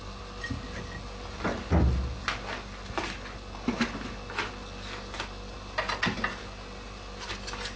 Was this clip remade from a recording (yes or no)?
no